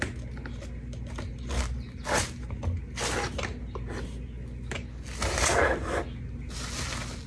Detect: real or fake real